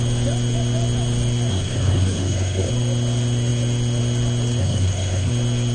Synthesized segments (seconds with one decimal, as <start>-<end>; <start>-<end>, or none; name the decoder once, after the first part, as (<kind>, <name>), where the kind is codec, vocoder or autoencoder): 1.5-2.7 (codec, SNAC); 4.6-5.3